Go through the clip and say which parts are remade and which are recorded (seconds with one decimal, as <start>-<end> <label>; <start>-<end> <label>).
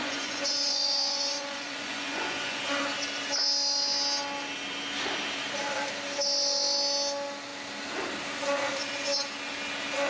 0.0-2.6 remade; 2.6-10.1 recorded